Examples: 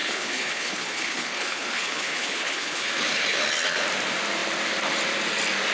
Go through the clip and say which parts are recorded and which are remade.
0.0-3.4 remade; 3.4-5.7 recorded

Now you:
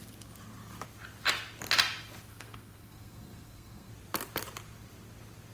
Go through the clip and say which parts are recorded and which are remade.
0.0-2.3 recorded; 2.3-3.9 remade; 3.9-5.5 recorded

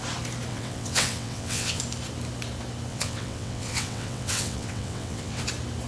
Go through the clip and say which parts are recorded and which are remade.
0.0-0.5 recorded; 0.5-1.8 remade; 1.8-2.9 recorded; 2.9-5.4 remade; 5.4-5.9 recorded

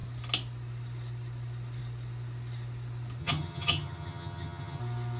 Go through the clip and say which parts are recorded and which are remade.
0.0-3.2 recorded; 3.2-4.8 remade; 4.8-5.2 recorded

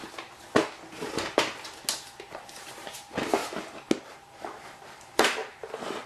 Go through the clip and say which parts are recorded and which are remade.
0.0-2.7 recorded; 2.7-3.4 remade; 3.4-4.1 recorded; 4.1-5.4 remade; 5.4-6.1 recorded

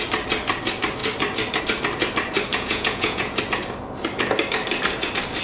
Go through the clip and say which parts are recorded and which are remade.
0.0-2.5 recorded; 2.5-3.4 remade; 3.4-5.4 recorded

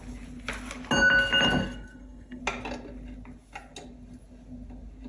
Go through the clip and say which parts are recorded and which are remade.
0.0-1.6 recorded; 1.6-2.4 remade; 2.4-5.1 recorded